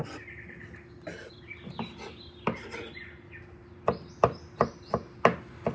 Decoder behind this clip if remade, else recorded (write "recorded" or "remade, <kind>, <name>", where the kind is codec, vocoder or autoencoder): recorded